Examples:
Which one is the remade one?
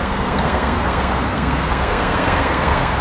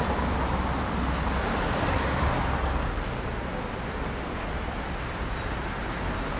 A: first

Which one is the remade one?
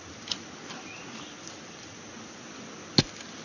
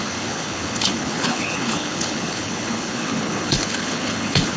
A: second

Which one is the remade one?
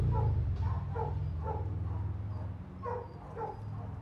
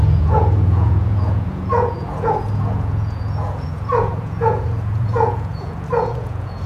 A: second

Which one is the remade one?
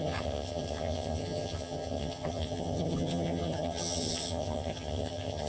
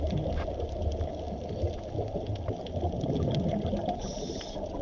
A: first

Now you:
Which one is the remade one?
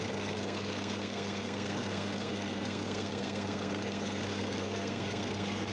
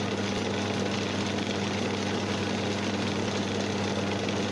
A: first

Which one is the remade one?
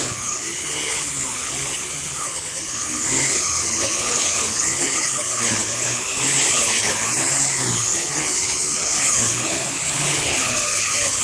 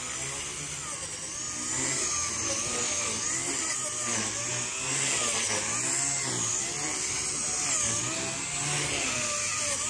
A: first